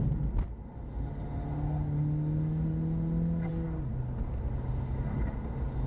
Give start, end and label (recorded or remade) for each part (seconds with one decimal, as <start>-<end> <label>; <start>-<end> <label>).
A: 0.0-5.9 recorded